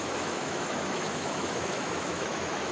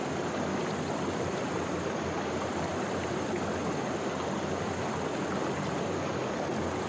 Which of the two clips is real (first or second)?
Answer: second